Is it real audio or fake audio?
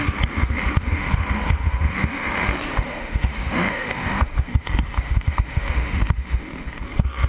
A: fake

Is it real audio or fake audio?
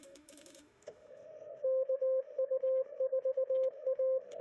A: fake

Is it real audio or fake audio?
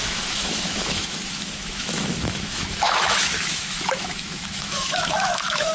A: fake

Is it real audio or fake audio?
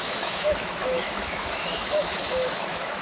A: fake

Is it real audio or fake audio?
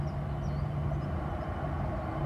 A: real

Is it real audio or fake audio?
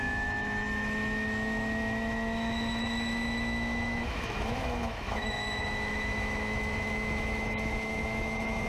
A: fake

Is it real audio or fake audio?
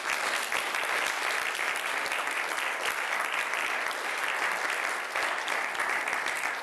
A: real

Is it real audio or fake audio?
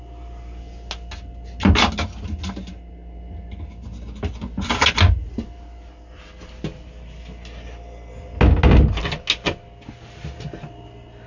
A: real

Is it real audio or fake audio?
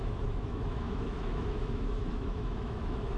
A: fake